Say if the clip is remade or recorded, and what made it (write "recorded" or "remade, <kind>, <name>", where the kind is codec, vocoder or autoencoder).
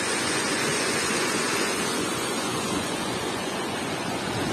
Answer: remade, vocoder, Vocos